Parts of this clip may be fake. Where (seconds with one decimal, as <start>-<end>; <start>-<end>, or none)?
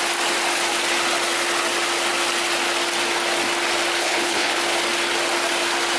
4.0-4.6